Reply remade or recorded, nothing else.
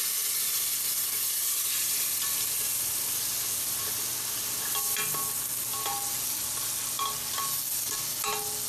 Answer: recorded